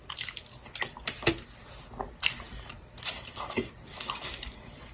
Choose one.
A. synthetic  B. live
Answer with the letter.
B